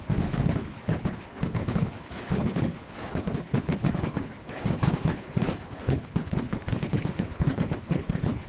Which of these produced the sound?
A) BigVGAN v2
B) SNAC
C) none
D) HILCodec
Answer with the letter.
D